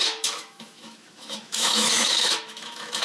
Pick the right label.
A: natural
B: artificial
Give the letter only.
B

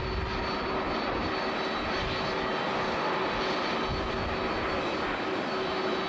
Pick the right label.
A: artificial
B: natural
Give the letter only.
B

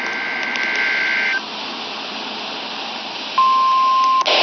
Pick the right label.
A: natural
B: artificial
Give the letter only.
A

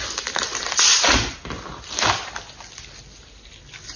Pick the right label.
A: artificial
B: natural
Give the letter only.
B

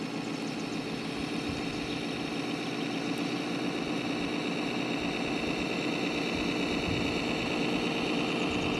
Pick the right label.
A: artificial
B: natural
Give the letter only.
B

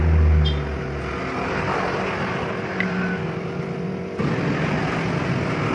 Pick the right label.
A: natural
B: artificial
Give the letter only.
A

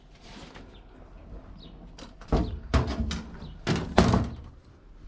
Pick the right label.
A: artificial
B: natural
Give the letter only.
B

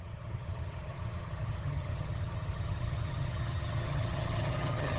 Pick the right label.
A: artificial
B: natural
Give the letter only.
A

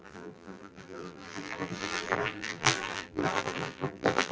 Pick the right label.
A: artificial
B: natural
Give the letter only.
A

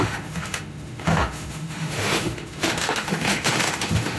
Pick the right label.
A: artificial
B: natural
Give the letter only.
A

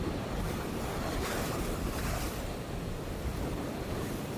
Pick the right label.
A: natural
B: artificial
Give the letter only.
A